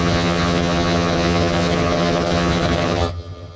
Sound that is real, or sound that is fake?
fake